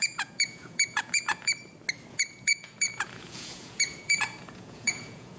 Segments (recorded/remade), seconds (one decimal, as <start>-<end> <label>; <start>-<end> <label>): 0.0-1.5 remade; 1.5-2.1 recorded; 2.1-5.4 remade